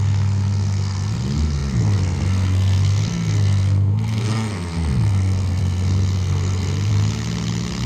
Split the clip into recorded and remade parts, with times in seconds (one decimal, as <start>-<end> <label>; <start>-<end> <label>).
0.0-6.9 remade; 6.9-7.9 recorded